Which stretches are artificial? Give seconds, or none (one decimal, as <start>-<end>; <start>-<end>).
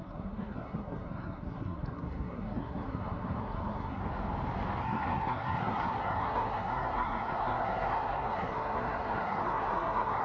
0.0-4.0; 4.8-10.2